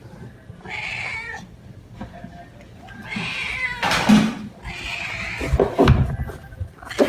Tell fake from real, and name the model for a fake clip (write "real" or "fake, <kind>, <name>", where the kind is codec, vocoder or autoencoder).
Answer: real